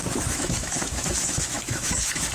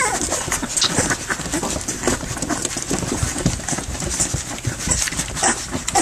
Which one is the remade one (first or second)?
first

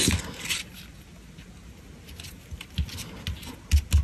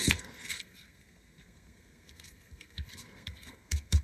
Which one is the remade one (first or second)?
second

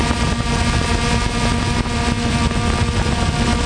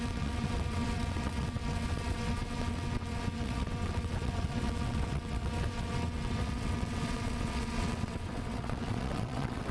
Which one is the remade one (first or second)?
second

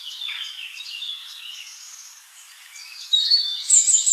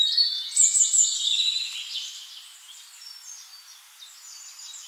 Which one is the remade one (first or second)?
first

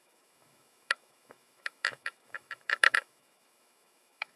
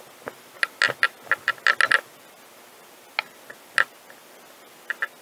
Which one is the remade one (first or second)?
first